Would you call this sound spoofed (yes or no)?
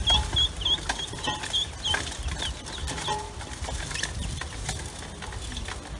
no